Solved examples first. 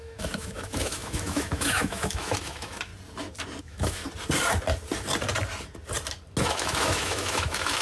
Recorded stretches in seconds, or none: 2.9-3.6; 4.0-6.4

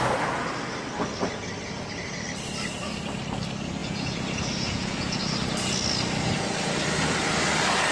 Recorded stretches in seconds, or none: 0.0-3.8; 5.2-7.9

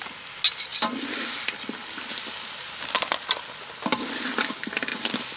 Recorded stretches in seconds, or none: 0.0-5.4

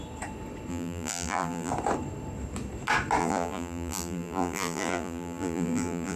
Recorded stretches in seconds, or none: 0.0-0.7; 1.7-3.2

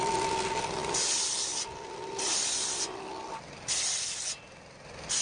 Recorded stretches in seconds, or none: 0.0-0.8; 3.0-5.2

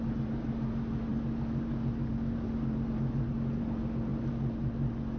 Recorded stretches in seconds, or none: 0.0-5.2